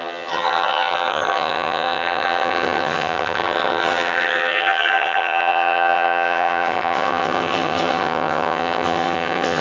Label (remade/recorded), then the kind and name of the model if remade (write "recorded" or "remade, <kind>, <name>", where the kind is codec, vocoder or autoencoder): remade, vocoder, HiFi-GAN